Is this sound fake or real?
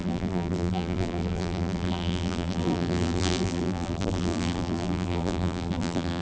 fake